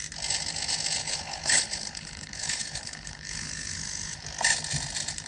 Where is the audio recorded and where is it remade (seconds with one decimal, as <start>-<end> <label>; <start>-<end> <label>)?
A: 0.0-1.0 recorded; 1.0-4.2 remade; 4.2-5.3 recorded